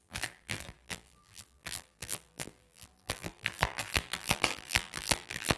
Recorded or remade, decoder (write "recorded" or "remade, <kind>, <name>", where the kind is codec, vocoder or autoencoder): remade, vocoder, BigVGAN v2